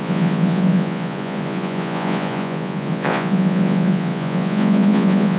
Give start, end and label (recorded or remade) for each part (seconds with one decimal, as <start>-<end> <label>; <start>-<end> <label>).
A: 0.0-5.4 remade